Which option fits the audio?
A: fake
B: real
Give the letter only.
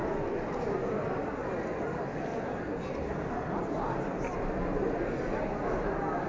B